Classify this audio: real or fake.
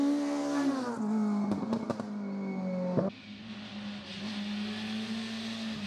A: real